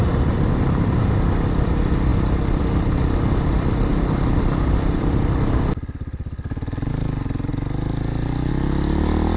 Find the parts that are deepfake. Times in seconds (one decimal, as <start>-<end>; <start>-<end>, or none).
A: none